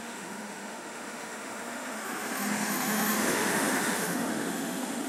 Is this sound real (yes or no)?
no